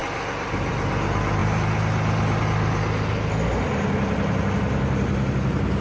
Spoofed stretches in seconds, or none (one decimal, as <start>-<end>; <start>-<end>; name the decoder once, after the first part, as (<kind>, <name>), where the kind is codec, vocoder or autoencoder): none